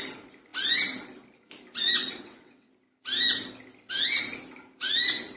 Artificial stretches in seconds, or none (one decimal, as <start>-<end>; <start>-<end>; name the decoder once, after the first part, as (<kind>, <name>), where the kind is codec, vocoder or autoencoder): 2.0-2.7 (vocoder, WaveNeXt)